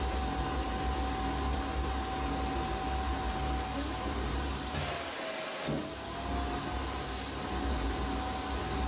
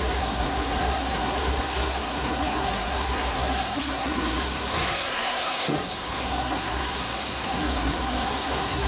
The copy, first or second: second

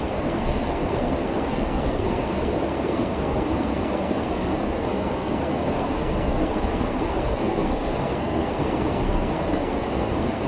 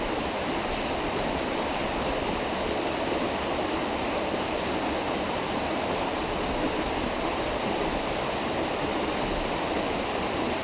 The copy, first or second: first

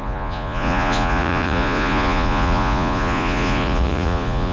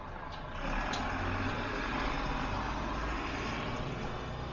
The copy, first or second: first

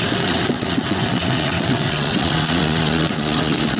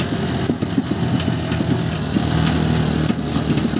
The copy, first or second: first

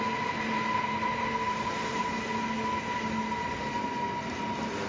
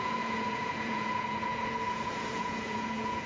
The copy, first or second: second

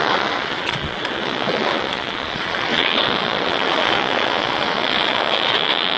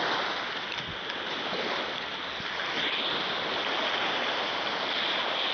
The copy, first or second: first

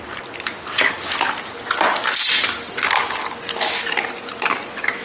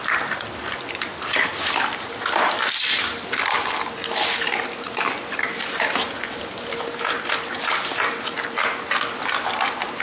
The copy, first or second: second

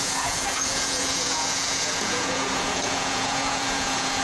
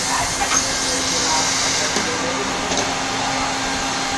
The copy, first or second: first